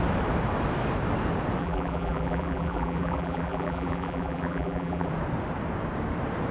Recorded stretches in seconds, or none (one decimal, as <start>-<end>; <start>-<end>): 0.0-1.6; 5.1-6.5